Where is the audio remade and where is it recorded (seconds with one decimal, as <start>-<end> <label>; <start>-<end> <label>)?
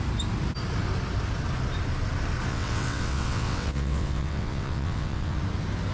0.0-2.5 recorded; 2.5-5.4 remade; 5.4-5.9 recorded